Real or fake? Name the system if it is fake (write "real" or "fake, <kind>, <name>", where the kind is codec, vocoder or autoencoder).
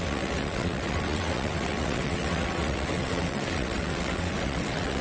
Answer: fake, vocoder, WaveNeXt